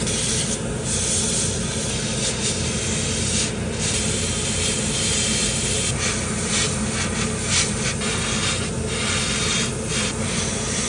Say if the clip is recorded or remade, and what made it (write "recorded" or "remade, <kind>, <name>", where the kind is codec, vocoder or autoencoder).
recorded